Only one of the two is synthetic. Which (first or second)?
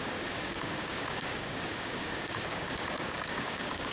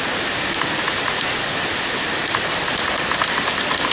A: first